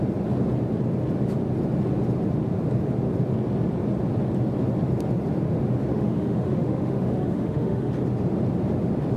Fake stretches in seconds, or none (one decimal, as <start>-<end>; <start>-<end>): 5.9-7.9